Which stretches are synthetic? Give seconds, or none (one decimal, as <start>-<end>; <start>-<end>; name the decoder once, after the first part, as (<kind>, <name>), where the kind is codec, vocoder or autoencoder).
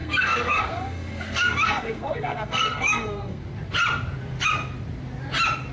0.0-3.4 (codec, SNAC)